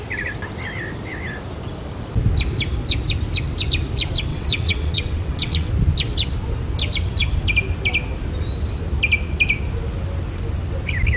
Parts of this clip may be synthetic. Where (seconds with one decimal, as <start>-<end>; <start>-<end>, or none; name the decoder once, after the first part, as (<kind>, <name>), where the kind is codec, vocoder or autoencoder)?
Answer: 4.3-5.7 (vocoder, WaveNeXt)